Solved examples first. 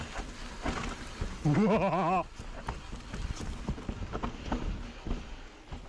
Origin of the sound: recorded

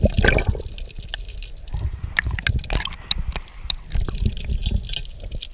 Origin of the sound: recorded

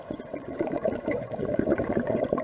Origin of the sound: remade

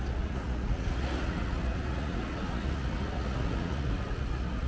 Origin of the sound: remade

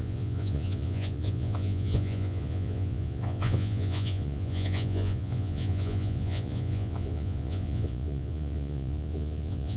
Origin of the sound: remade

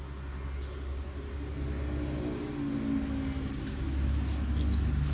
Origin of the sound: recorded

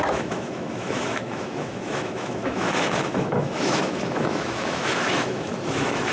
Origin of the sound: remade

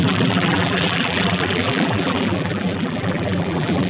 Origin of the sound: remade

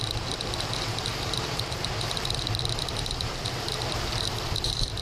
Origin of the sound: remade